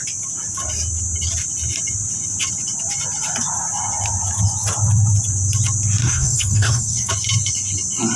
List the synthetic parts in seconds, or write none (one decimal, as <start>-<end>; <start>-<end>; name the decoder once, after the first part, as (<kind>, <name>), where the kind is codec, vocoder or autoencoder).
6.0-7.1 (codec, SNAC)